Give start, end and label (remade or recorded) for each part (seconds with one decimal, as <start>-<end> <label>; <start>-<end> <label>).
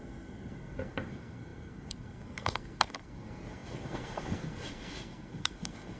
0.0-6.0 remade